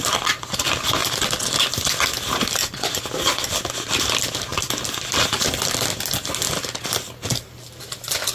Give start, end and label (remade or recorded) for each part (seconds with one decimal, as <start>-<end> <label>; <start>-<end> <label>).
0.0-1.0 recorded; 1.0-3.0 remade; 3.0-4.5 recorded; 4.5-5.5 remade; 5.5-8.3 recorded

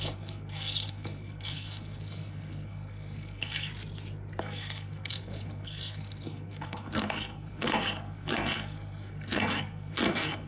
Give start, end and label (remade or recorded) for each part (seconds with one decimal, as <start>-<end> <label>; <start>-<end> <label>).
0.0-3.7 remade; 3.7-4.4 recorded; 4.4-10.5 remade

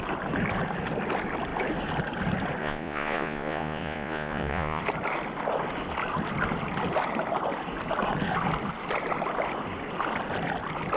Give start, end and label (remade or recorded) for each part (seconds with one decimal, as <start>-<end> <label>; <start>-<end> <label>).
0.0-2.6 recorded; 2.6-4.8 remade; 4.8-11.0 recorded

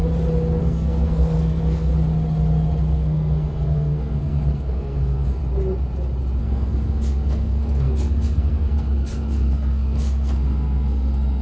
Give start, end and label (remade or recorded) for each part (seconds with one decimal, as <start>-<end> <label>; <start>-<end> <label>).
0.0-0.6 recorded; 0.6-1.9 remade; 1.9-2.8 recorded; 2.8-5.4 remade; 5.4-6.4 recorded; 6.4-11.4 remade

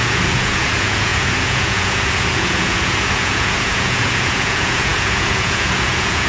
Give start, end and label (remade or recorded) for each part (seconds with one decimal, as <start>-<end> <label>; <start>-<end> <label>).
0.0-6.3 remade

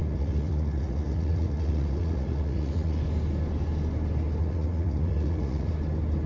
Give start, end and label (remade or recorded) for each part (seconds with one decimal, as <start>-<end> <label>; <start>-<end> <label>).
0.0-3.0 remade; 3.0-4.4 recorded; 4.4-5.7 remade; 5.7-6.3 recorded